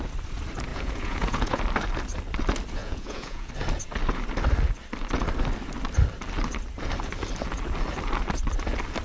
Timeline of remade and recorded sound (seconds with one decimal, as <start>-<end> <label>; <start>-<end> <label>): 0.0-0.7 recorded; 0.7-1.6 remade; 1.6-2.8 recorded; 2.8-3.5 remade; 3.5-9.0 recorded